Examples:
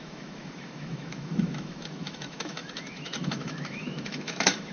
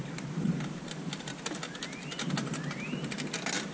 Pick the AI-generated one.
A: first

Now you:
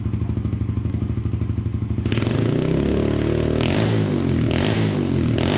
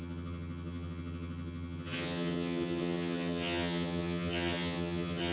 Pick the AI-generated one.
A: second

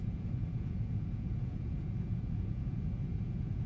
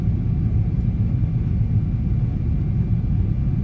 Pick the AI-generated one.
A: first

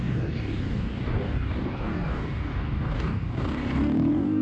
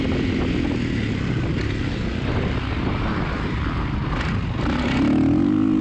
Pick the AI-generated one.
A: first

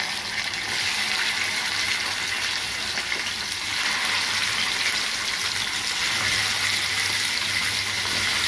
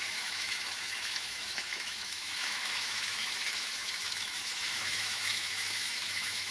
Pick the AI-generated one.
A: second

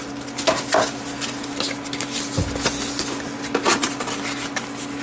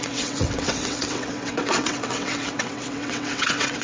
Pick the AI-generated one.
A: second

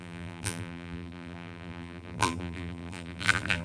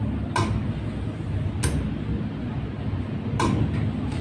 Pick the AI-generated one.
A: first